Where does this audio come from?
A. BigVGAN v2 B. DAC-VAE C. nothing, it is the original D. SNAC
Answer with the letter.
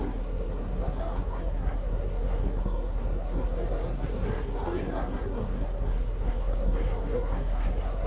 D